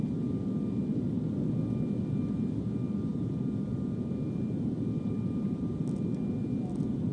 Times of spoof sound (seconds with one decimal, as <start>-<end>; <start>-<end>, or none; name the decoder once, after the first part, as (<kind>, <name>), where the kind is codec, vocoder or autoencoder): 3.1-5.8 (vocoder, BigVGAN v2)